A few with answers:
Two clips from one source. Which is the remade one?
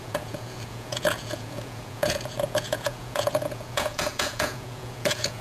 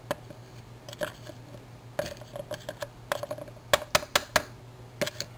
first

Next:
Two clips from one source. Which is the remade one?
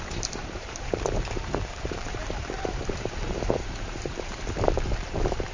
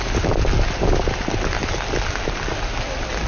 first